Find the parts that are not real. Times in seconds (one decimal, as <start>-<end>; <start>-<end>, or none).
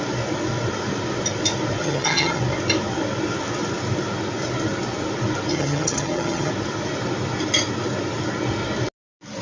1.8-2.4; 5.5-6.5